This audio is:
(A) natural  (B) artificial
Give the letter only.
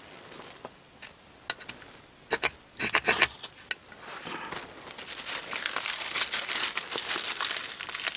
A